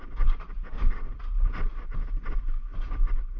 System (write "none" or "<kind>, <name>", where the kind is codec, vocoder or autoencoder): none